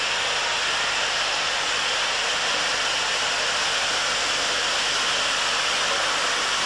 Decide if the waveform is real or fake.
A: real